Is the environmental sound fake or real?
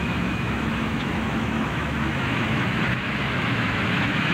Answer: fake